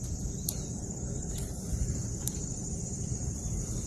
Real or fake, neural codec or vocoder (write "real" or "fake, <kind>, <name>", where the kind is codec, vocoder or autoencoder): fake, vocoder, BigVGAN v2